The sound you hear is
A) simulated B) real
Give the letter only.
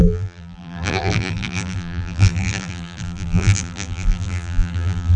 A